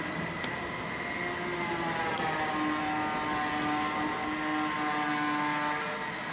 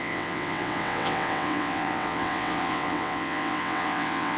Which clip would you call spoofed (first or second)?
second